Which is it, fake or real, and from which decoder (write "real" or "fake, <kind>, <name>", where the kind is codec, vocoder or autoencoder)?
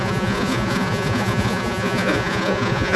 fake, vocoder, Vocos